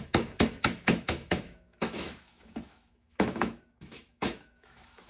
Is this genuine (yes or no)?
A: no